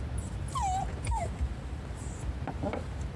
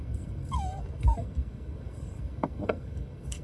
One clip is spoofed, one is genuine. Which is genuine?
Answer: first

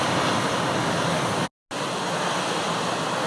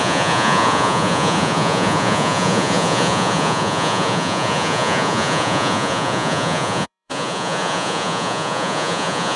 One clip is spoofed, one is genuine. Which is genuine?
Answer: first